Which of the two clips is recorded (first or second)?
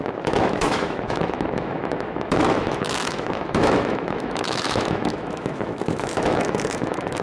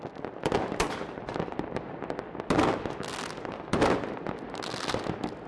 second